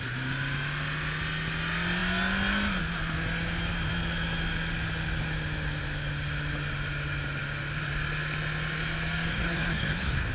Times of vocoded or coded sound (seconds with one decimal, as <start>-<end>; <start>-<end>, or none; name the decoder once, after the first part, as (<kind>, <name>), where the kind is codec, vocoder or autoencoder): 9.3-10.3 (codec, SNAC)